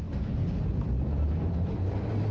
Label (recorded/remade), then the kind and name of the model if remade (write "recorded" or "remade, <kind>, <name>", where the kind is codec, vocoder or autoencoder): recorded